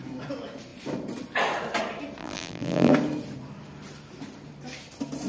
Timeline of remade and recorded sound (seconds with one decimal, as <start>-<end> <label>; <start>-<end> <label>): 0.0-2.2 recorded; 2.2-2.9 remade; 2.9-5.3 recorded